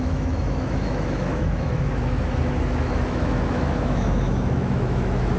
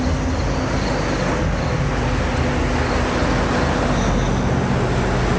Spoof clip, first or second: first